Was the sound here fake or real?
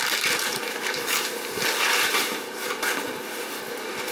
real